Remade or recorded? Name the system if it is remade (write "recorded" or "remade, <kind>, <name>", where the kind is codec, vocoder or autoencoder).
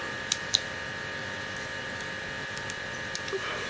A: recorded